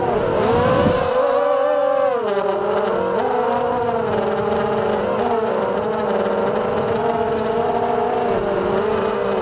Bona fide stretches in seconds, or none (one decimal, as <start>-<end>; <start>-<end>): 0.0-9.4